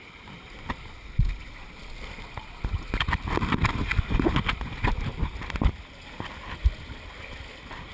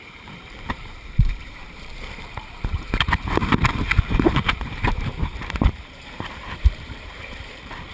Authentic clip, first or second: first